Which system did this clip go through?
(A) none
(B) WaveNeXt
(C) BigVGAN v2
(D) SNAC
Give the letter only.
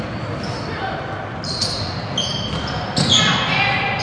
A